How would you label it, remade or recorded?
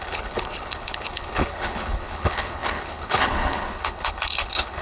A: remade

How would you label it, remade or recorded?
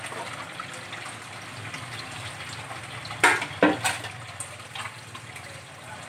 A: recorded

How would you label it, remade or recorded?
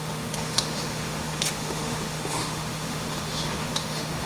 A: remade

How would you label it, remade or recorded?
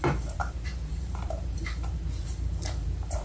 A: remade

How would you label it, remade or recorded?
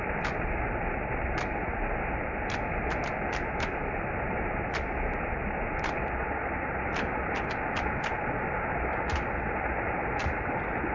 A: recorded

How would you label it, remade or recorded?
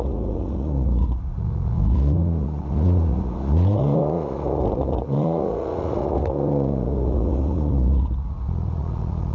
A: remade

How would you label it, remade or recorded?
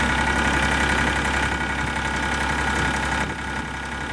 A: recorded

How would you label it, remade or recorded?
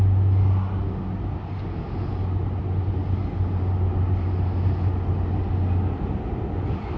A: recorded